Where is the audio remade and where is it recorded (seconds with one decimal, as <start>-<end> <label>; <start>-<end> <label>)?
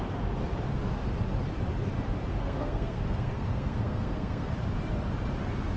0.0-2.3 recorded; 2.3-4.5 remade; 4.5-5.8 recorded